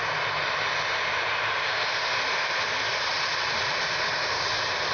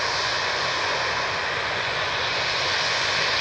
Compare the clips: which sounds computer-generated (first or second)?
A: second